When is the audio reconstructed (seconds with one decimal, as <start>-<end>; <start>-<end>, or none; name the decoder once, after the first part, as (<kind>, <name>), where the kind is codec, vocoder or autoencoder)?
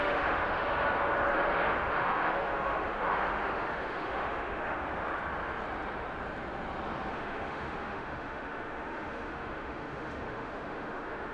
0.0-0.6 (autoencoder, DAC-VAE); 1.3-4.8; 7.1-11.3